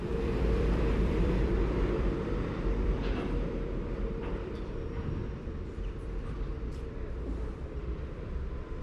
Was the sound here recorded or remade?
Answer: remade